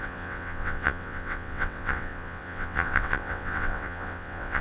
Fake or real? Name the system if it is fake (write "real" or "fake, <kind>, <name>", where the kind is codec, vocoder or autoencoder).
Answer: fake, vocoder, WaveNeXt